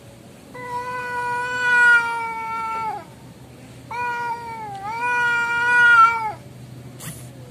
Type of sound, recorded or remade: recorded